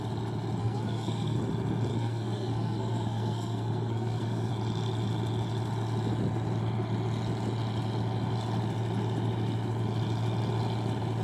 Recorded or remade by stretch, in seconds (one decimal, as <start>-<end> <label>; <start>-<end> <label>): 0.0-0.6 recorded; 0.6-1.4 remade; 1.4-1.9 recorded; 1.9-4.5 remade; 4.5-11.2 recorded